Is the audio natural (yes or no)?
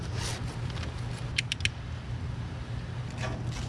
yes